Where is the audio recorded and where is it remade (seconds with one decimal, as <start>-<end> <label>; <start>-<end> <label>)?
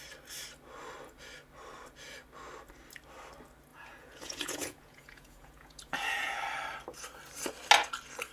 0.0-3.7 recorded; 3.7-6.4 remade; 6.4-8.3 recorded